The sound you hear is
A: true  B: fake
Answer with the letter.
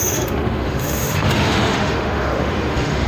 B